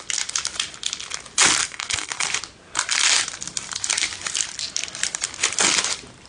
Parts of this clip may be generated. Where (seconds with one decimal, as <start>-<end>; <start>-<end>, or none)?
1.6-2.3